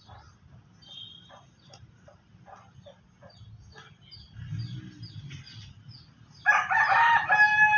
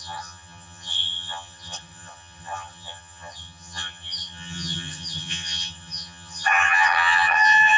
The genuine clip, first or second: first